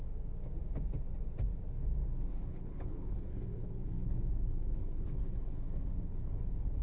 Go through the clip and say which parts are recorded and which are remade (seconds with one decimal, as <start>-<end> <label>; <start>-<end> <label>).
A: 0.0-2.3 recorded; 2.3-6.8 remade